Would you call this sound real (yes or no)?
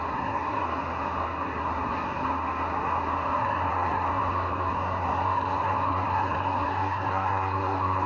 no